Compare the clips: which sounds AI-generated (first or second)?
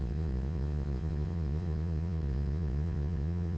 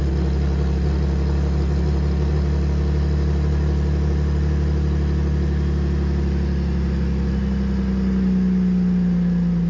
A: first